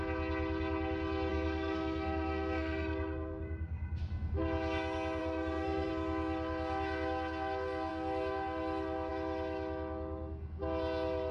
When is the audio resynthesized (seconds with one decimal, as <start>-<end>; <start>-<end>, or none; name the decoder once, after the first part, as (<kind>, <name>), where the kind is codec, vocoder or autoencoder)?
1.3-4.0 (codec, SNAC); 5.2-5.9